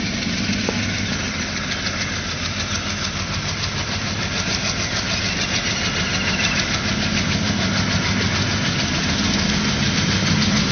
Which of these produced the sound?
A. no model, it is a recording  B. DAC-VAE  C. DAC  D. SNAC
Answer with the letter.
A